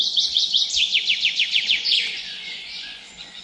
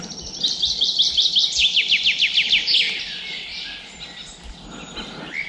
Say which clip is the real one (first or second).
second